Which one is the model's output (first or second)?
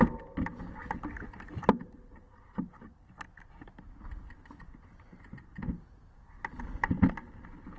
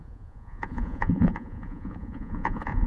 second